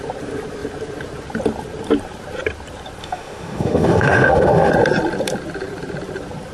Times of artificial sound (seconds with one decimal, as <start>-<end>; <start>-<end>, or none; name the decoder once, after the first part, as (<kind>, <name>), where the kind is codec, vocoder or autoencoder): 3.0-4.7 (autoencoder, DAC-VAE)